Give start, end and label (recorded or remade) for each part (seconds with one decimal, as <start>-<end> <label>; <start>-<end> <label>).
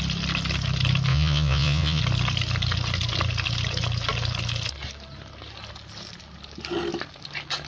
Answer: 0.0-1.1 recorded; 1.1-2.0 remade; 2.0-7.7 recorded